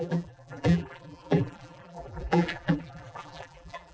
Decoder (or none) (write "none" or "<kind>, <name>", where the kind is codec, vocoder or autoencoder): vocoder, BigVGAN v2